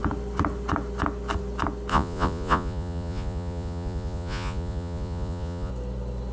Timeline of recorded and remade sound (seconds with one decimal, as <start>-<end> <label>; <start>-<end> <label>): 0.0-1.9 recorded; 1.9-5.7 remade; 5.7-6.3 recorded